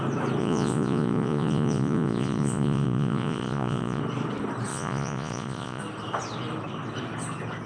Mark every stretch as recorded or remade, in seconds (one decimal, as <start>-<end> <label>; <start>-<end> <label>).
0.0-0.4 recorded; 0.4-4.0 remade; 4.0-4.7 recorded; 4.7-5.8 remade; 5.8-7.7 recorded

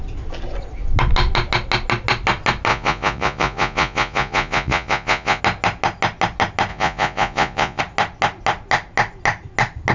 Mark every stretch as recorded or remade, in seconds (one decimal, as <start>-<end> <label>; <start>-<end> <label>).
0.0-2.7 recorded; 2.7-5.4 remade; 5.4-6.7 recorded; 6.7-7.8 remade; 7.8-9.9 recorded

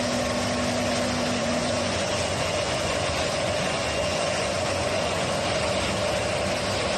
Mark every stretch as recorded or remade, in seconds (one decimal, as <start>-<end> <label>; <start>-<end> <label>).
0.0-1.4 recorded; 1.4-5.6 remade; 5.6-7.0 recorded

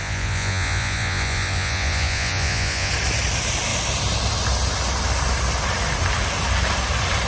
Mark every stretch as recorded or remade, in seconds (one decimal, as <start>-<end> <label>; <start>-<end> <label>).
0.0-2.9 remade; 2.9-7.3 recorded